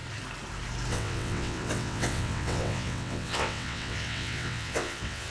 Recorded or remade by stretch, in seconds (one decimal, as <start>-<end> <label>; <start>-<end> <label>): 0.0-0.9 recorded; 0.9-5.3 remade